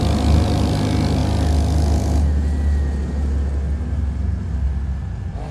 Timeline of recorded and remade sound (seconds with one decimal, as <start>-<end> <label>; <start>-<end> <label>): 0.0-5.5 recorded